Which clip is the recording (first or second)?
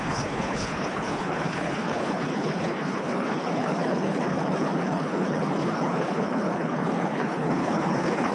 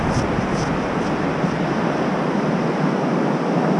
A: second